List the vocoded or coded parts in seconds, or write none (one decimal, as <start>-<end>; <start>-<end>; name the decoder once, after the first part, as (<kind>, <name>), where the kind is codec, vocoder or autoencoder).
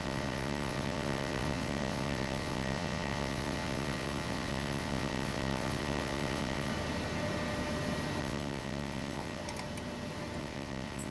0.0-6.7 (vocoder, WaveNeXt); 8.2-9.4; 10.4-11.1